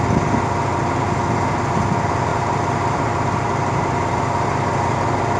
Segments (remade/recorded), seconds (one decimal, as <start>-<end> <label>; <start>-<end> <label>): 0.0-2.3 recorded; 2.3-4.5 remade; 4.5-5.4 recorded